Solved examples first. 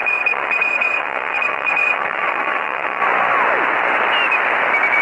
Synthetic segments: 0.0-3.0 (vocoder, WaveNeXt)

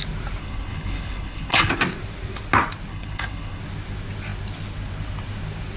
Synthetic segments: 0.4-1.7 (codec, HILCodec); 2.9-3.6

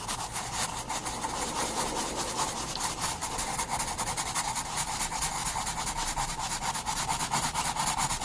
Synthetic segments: none

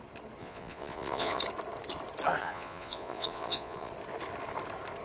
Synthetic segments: 0.4-1.4 (vocoder, Vocos); 2.4-3.9

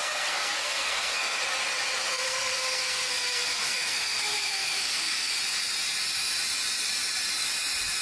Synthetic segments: 0.0-1.4 (codec, SNAC); 2.1-5.3

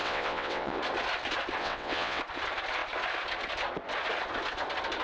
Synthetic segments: 0.0-0.8 (vocoder, WaveNeXt); 1.6-2.2

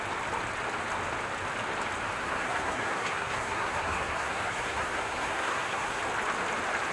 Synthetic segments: 2.2-6.0 (codec, SNAC)

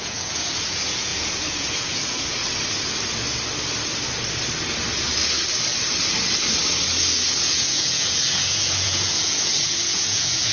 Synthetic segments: 0.0-2.4 (vocoder, Vocos); 7.4-10.5